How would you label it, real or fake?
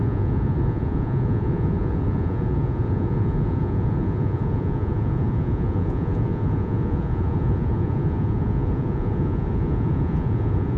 fake